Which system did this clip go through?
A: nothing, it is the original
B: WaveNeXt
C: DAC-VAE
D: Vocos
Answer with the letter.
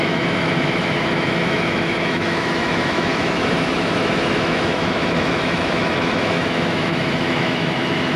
C